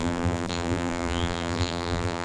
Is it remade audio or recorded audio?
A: remade